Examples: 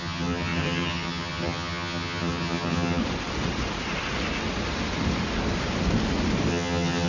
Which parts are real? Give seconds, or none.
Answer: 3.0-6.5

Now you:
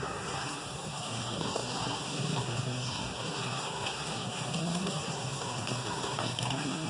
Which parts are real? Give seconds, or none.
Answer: none

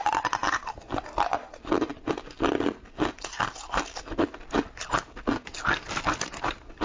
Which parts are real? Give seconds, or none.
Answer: 0.0-6.8

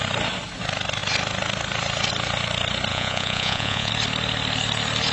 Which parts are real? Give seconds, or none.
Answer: 0.0-2.9; 3.9-5.1

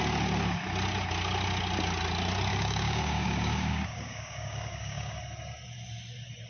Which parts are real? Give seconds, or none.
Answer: 0.0-2.5; 5.2-6.5